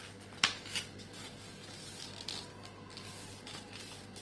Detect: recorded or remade recorded